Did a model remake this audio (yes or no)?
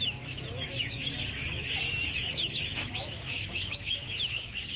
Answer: yes